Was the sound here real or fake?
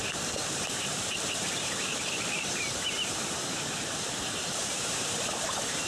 fake